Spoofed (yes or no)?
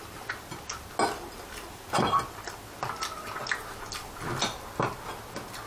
no